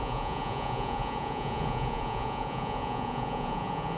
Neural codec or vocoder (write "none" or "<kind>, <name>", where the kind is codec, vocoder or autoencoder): vocoder, Vocos